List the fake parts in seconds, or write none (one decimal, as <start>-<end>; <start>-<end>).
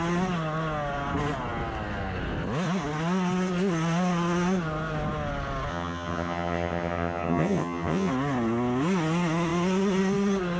5.7-8.1